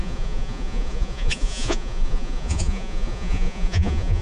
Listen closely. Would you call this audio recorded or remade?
remade